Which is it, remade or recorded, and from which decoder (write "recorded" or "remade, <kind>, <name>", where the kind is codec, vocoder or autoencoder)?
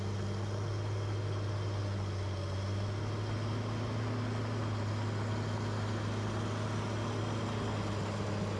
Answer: recorded